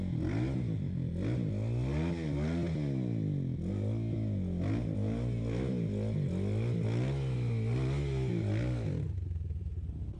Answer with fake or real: real